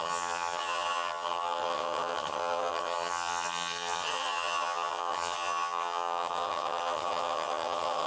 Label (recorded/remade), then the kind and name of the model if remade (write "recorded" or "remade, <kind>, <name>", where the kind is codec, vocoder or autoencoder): remade, vocoder, HiFi-GAN